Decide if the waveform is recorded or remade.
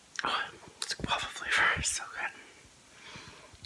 recorded